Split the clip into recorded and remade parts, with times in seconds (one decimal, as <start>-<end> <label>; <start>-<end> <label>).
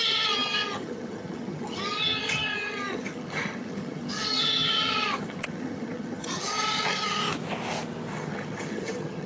0.0-7.2 remade; 7.2-8.1 recorded; 8.1-9.3 remade